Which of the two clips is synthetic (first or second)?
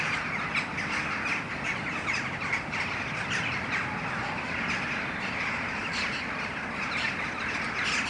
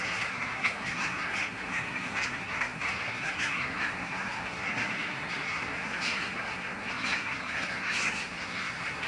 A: second